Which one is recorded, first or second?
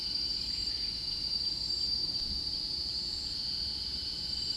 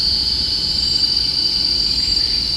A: second